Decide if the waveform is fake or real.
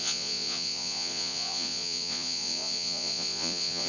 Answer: fake